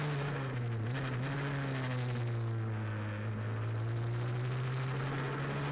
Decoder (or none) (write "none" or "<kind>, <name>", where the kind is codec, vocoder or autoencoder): none